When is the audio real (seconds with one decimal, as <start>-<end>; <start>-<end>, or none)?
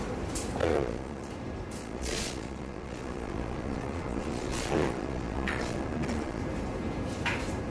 0.0-0.6; 1.3-1.8; 6.4-7.7